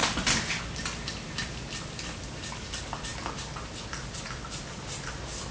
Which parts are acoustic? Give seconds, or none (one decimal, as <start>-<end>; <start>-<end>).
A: 0.0-5.5